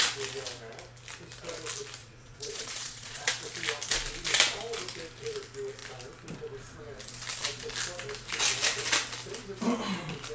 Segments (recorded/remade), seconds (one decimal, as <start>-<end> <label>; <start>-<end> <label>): 0.0-2.0 recorded; 2.0-3.3 remade; 3.3-10.3 recorded